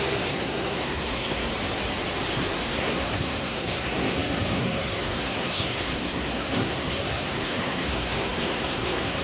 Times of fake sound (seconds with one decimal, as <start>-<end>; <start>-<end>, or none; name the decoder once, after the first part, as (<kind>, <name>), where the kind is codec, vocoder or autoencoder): 0.0-1.5 (codec, SNAC); 2.3-9.2